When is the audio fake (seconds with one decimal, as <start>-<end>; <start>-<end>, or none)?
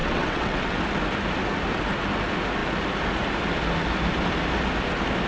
0.0-0.8